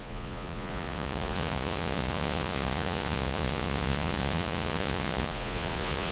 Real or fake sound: fake